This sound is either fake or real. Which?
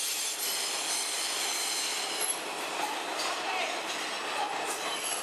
real